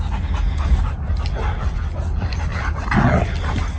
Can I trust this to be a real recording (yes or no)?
yes